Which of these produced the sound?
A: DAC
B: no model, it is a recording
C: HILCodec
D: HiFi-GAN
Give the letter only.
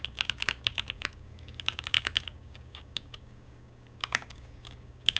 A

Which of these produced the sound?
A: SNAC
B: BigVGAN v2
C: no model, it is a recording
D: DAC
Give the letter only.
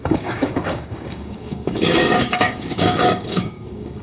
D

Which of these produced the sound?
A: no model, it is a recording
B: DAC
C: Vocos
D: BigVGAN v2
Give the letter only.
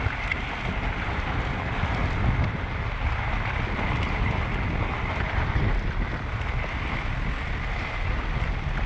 A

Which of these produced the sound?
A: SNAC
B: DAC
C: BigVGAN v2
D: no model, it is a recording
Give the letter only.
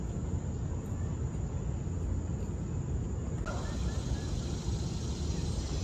D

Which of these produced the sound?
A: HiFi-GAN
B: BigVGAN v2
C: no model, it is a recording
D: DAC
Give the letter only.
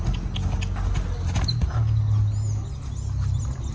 C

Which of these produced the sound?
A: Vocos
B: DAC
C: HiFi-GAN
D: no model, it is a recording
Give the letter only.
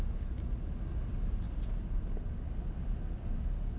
D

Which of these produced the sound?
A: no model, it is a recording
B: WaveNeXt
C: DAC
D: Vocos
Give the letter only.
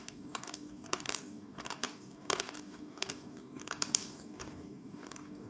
C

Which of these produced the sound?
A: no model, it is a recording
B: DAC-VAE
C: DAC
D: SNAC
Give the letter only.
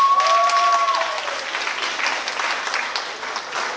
A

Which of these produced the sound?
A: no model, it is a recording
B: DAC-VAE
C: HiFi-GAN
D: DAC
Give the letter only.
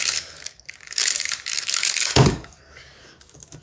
D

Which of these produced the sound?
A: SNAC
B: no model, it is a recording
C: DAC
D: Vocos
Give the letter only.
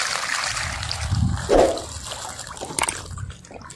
B